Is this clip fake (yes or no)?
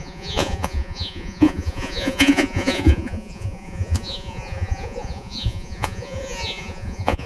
yes